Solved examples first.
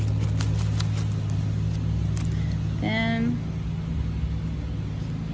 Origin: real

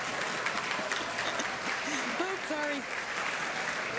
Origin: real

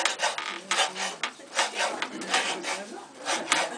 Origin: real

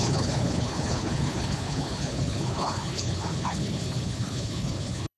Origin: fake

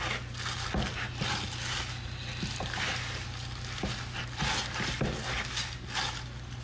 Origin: real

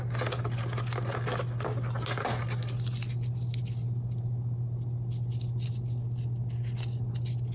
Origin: real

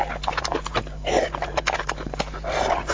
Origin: real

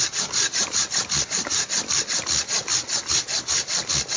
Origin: real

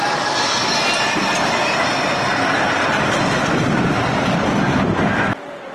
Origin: fake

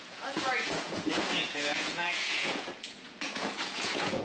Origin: fake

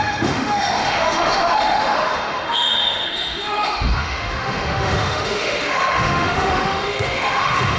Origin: fake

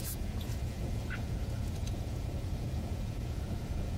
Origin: fake